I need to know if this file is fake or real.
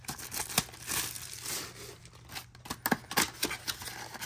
real